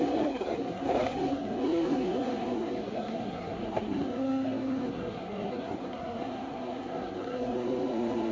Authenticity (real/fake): fake